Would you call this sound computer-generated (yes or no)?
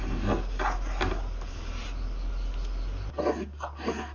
no